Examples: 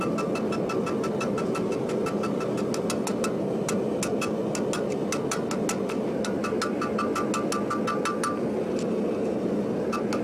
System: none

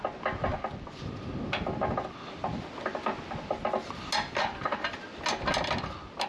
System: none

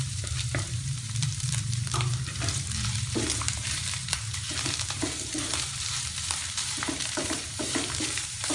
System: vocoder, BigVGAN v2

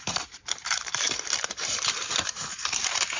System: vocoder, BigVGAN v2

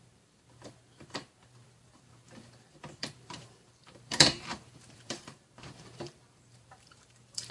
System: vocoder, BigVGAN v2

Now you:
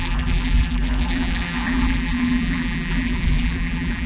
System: vocoder, BigVGAN v2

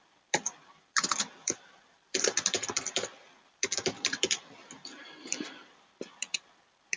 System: vocoder, BigVGAN v2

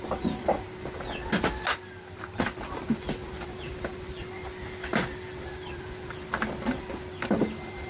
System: none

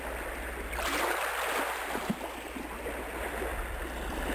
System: none